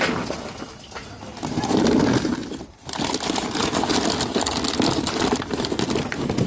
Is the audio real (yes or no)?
yes